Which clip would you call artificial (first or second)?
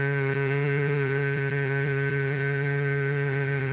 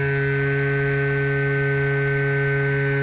first